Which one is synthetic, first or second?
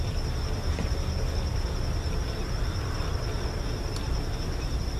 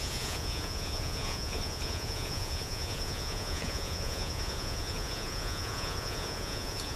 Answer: second